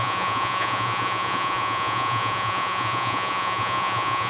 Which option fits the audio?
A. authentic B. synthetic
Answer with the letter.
B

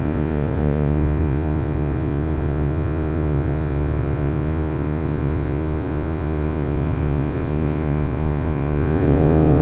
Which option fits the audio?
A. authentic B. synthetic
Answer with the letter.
B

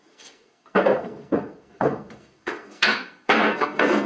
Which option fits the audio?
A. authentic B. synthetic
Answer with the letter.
B